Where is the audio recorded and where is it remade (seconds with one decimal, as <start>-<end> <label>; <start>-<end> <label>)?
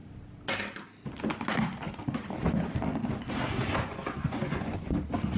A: 0.0-3.6 recorded; 3.6-5.0 remade; 5.0-5.4 recorded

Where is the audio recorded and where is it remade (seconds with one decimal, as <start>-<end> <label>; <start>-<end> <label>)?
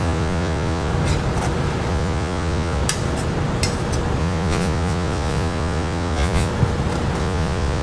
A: 0.0-0.9 remade; 0.9-1.9 recorded; 1.9-2.8 remade; 2.8-4.2 recorded; 4.2-6.5 remade; 6.5-7.2 recorded; 7.2-7.8 remade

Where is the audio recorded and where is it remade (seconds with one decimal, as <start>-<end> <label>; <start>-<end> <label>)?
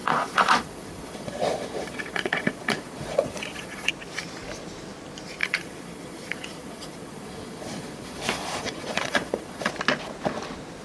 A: 0.0-3.9 remade; 3.9-5.4 recorded; 5.4-9.7 remade; 9.7-10.8 recorded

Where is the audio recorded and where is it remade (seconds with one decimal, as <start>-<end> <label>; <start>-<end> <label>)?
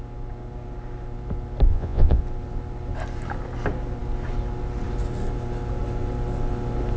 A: 0.0-1.7 recorded; 1.7-2.2 remade; 2.2-7.0 recorded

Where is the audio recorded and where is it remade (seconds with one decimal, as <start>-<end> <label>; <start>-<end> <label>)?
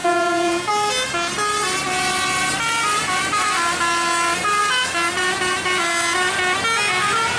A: 0.0-0.7 remade; 0.7-7.4 recorded